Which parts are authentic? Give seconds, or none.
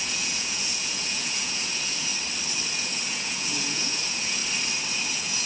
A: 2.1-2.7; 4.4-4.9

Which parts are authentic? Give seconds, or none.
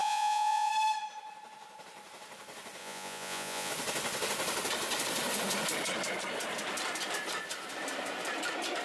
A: 0.7-2.8; 3.7-8.8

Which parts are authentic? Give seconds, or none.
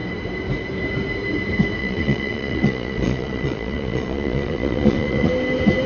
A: 0.0-1.8; 5.3-5.9